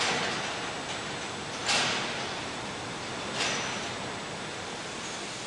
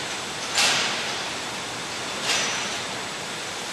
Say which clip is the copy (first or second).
second